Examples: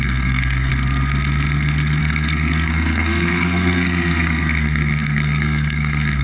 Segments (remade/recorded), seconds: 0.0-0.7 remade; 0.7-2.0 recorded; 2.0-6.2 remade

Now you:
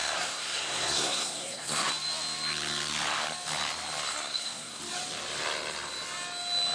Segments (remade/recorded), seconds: 0.0-1.9 remade; 1.9-4.1 recorded; 4.1-4.8 remade; 4.8-6.7 recorded

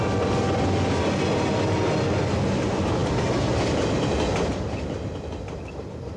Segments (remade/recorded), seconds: 0.0-6.2 recorded

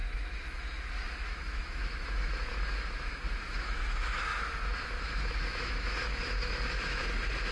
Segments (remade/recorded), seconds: 0.0-7.0 remade; 7.0-7.5 recorded

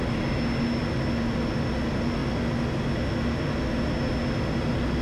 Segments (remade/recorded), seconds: 0.0-5.0 recorded

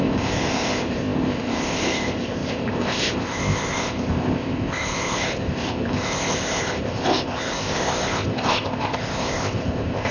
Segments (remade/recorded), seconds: 0.0-10.1 remade

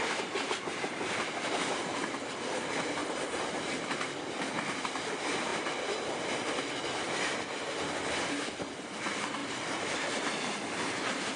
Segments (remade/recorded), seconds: 0.0-3.0 recorded; 3.0-3.7 remade; 3.7-9.4 recorded; 9.4-10.9 remade; 10.9-11.4 recorded

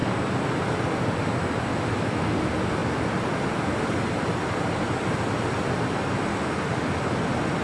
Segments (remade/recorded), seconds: 0.0-1.7 recorded; 1.7-2.3 remade; 2.3-7.6 recorded